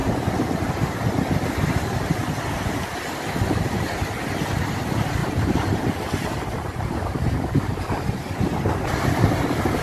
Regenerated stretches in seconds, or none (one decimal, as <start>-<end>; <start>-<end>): 0.0-0.7; 5.2-7.8